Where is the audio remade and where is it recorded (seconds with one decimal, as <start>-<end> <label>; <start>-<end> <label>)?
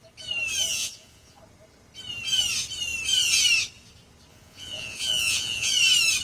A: 0.0-0.7 recorded; 0.7-1.4 remade; 1.4-4.3 recorded; 4.3-5.7 remade; 5.7-6.2 recorded